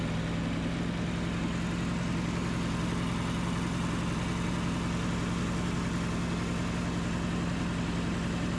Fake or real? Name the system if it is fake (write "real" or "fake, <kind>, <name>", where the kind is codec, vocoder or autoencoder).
real